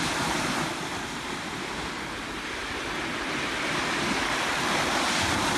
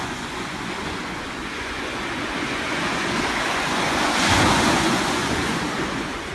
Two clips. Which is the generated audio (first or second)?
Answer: second